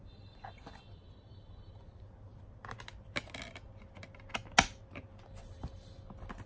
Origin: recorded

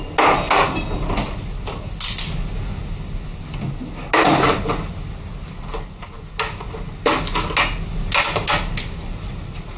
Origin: recorded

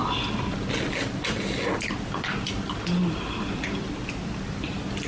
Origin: recorded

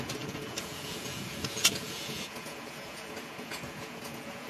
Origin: remade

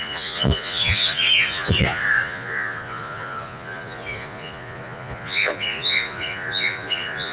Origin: remade